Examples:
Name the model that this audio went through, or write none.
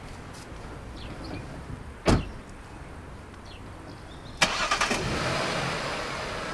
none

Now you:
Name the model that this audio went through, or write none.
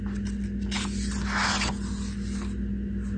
none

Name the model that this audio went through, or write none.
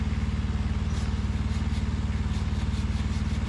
none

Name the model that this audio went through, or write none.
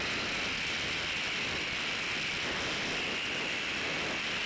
none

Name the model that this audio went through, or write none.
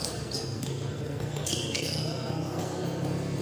codec, SNAC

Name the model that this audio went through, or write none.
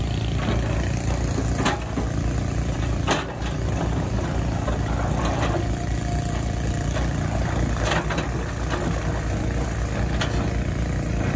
none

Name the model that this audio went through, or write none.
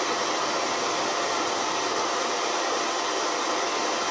none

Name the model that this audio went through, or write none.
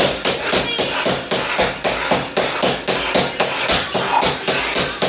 none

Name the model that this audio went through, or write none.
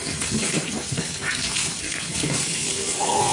codec, SNAC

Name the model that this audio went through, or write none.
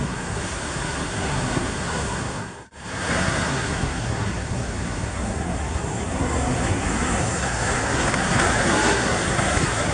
codec, SNAC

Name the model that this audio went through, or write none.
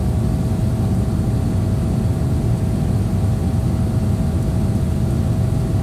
none